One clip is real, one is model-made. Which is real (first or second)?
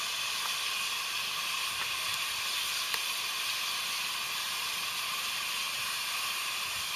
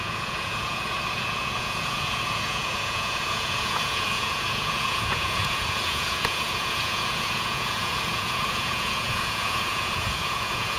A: first